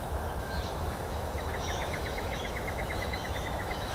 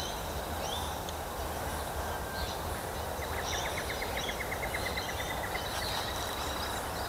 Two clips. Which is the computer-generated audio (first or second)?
first